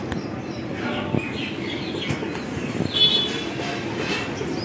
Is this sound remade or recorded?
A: recorded